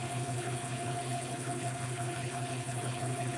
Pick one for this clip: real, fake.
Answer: fake